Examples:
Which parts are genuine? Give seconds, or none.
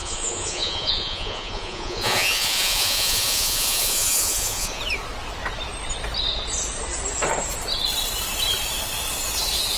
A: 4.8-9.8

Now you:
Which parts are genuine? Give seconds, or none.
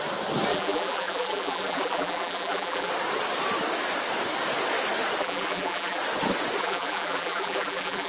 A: 0.0-0.5; 2.9-5.2; 6.0-6.6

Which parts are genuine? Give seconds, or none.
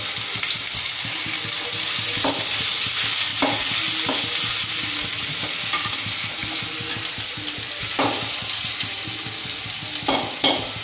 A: 0.0-10.8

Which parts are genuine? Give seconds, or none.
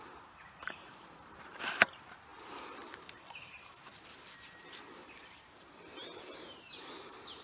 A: none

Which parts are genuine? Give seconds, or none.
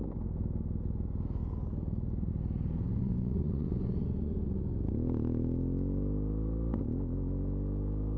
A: 0.0-3.0; 4.5-8.2